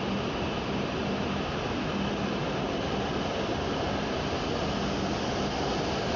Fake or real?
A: real